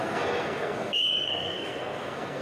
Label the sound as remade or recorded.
remade